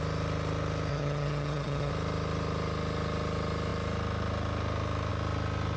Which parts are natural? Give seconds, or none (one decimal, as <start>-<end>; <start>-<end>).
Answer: 0.0-0.9; 1.9-5.8